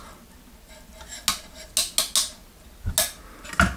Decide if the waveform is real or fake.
real